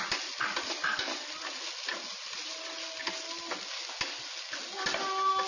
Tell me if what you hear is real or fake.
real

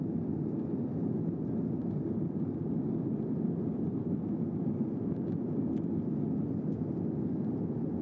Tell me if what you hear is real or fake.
real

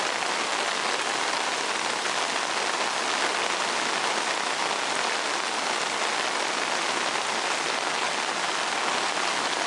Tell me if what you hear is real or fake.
real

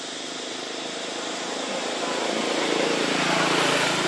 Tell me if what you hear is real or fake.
fake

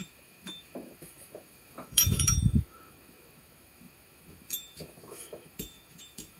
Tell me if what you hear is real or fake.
fake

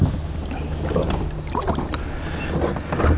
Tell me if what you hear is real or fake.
real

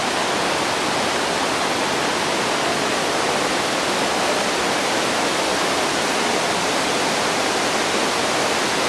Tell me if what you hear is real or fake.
real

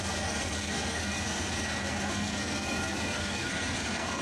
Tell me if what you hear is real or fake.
fake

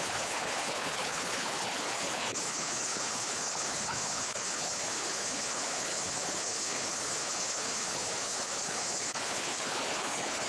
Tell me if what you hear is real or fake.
fake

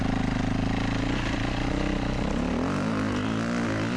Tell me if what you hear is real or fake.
real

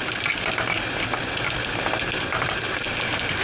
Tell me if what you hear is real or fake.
real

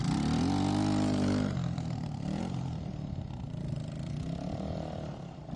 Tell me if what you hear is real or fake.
fake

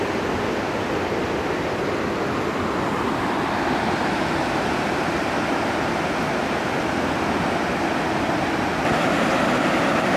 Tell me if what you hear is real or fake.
real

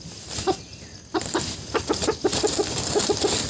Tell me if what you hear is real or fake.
real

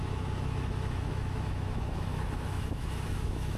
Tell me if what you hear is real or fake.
fake